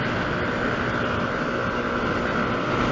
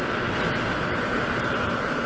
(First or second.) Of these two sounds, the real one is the first